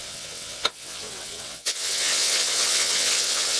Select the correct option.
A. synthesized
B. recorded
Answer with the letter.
A